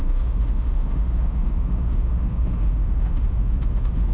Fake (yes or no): yes